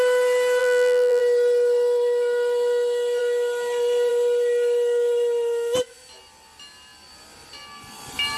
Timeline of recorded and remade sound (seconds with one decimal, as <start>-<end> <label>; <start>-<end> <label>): 0.0-0.6 recorded; 0.6-1.2 remade; 1.2-8.4 recorded